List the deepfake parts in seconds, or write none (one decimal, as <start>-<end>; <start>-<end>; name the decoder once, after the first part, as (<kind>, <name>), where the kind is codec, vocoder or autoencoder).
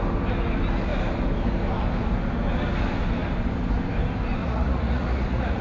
4.4-5.6 (vocoder, Vocos)